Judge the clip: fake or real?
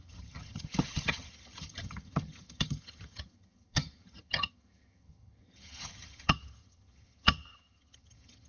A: fake